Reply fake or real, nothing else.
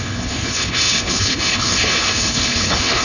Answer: fake